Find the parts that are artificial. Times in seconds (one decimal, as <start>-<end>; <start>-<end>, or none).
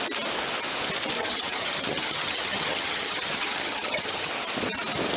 1.2-4.3